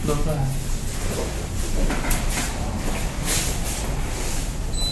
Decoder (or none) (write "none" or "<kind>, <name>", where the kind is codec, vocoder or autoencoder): none